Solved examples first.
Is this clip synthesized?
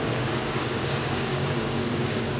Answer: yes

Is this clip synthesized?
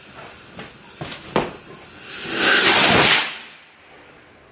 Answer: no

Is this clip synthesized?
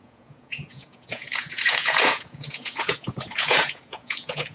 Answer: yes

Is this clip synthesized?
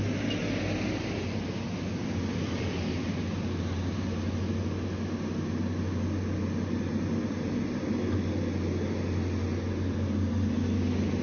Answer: no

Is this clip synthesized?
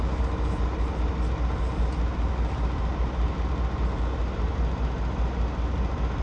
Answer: no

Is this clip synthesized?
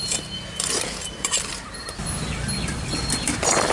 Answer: yes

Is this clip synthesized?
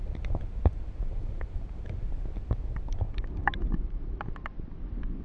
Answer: no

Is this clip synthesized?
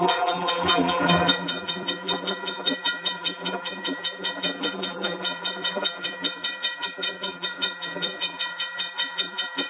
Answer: yes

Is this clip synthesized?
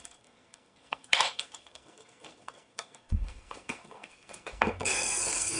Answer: yes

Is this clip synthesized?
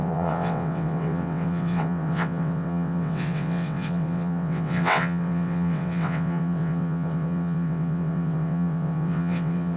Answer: yes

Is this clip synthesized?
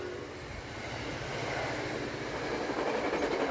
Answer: no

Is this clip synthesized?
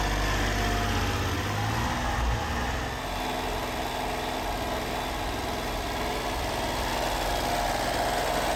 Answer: no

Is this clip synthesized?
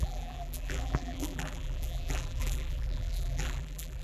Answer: yes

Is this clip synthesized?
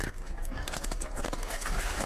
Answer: yes